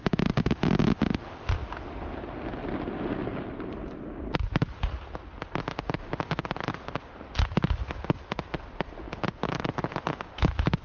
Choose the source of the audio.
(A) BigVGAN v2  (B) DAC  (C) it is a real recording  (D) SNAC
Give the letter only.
C